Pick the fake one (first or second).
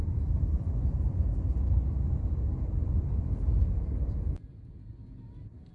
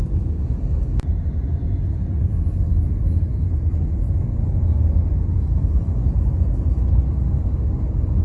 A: first